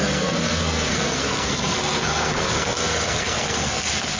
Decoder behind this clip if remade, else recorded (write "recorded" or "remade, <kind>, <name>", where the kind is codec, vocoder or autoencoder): remade, codec, SNAC